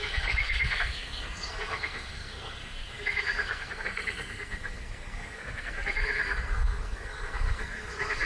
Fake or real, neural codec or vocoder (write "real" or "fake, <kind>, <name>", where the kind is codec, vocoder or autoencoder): fake, codec, SNAC